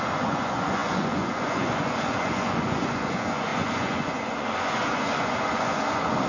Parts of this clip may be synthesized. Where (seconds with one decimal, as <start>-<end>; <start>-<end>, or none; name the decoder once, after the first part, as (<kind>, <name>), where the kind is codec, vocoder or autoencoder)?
0.0-6.3 (vocoder, Vocos)